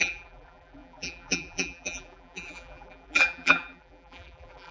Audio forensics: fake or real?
fake